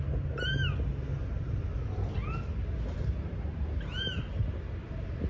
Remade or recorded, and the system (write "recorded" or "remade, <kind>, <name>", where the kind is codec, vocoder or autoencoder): recorded